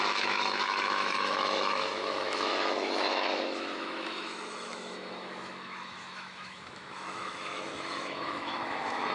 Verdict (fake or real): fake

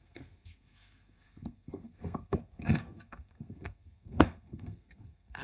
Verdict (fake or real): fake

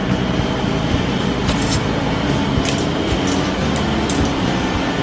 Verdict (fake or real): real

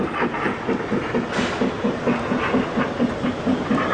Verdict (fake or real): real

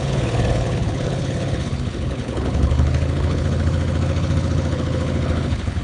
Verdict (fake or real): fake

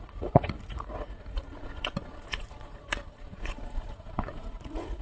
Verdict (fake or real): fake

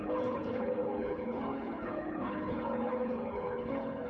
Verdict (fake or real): fake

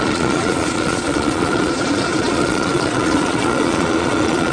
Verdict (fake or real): fake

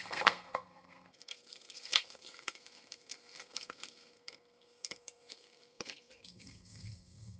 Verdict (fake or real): fake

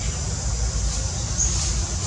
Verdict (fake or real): real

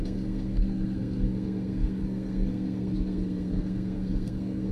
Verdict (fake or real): fake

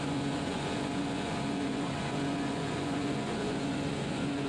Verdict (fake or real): fake